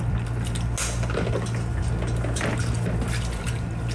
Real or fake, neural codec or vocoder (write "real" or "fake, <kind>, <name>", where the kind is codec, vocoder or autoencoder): real